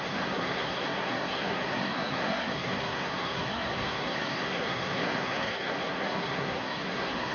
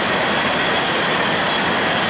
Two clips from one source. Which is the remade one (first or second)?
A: first